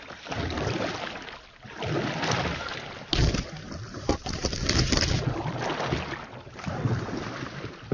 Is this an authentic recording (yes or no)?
yes